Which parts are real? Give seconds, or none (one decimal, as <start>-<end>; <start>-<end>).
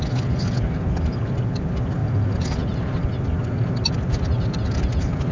0.0-5.3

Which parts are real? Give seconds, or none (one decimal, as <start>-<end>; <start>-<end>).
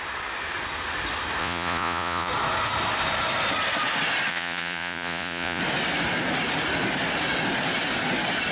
0.0-1.4; 2.3-4.3; 5.6-8.5